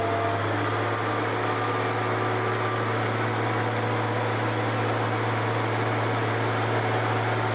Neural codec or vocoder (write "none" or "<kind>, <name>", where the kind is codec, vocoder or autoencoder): none